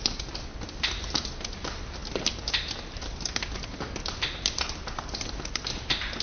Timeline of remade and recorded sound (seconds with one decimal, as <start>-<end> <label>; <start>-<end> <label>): 0.0-6.2 recorded